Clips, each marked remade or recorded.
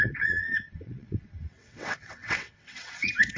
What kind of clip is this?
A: remade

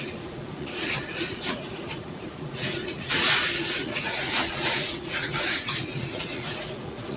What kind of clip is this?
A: remade